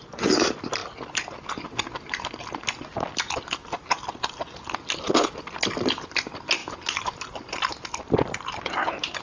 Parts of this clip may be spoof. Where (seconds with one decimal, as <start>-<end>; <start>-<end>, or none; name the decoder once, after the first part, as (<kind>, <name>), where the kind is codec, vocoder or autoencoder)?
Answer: none